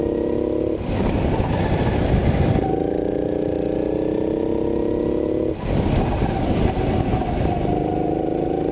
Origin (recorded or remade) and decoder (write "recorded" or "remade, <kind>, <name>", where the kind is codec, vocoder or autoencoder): recorded